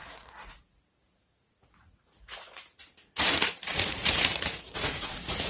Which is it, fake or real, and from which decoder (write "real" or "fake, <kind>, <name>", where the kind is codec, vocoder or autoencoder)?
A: fake, vocoder, Vocos